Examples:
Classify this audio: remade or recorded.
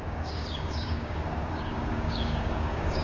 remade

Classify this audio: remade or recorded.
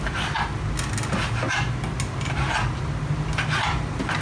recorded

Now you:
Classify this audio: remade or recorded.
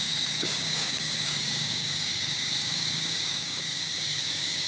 remade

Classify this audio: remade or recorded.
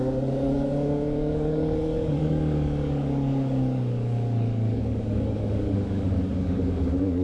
remade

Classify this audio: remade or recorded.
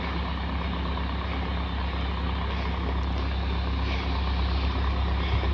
recorded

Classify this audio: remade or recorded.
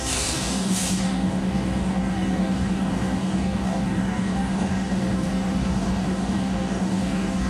remade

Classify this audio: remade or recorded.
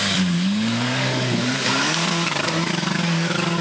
remade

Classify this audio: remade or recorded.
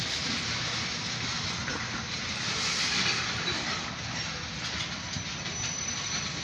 recorded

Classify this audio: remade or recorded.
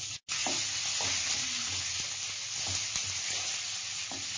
recorded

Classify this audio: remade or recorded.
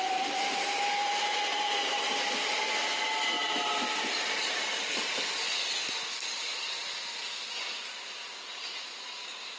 recorded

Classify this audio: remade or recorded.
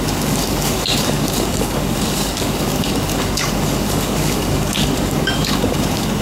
remade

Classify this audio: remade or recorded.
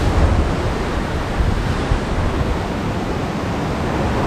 recorded